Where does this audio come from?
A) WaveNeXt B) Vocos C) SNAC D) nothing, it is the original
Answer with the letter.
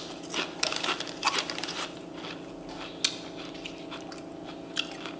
D